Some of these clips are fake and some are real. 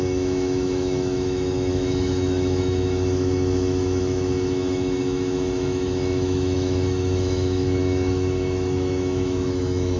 fake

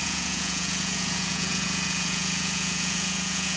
fake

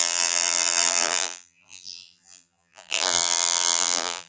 fake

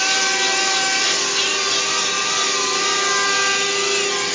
real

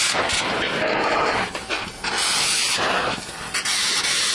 real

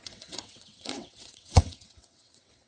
fake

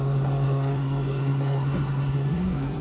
fake